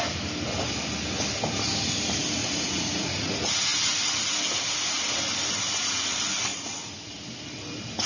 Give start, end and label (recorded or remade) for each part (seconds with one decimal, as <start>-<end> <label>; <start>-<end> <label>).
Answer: 0.0-2.4 recorded; 2.4-3.3 remade; 3.3-6.5 recorded; 6.5-7.1 remade; 7.1-8.1 recorded

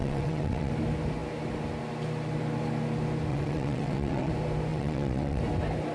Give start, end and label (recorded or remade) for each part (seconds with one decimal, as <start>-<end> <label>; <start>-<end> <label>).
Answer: 0.0-0.7 remade; 0.7-3.3 recorded; 3.3-4.3 remade; 4.3-4.7 recorded; 4.7-5.4 remade; 5.4-5.9 recorded

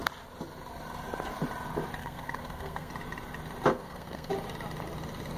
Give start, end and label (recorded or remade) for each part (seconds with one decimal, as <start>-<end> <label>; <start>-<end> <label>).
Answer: 0.0-2.0 recorded; 2.0-2.9 remade; 2.9-3.7 recorded; 3.7-4.3 remade; 4.3-5.4 recorded

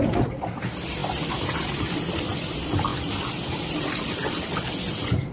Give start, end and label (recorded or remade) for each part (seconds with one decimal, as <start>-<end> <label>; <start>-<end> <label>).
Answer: 0.0-2.9 remade; 2.9-3.5 recorded; 3.5-4.2 remade; 4.2-5.3 recorded

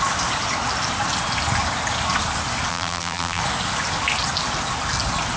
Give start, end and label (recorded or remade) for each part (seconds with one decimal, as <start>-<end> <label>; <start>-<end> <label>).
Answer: 0.0-2.7 recorded; 2.7-3.4 remade; 3.4-5.4 recorded